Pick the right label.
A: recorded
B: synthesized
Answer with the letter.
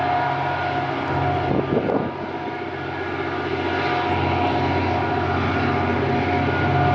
A